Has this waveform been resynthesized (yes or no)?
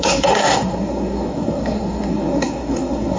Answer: yes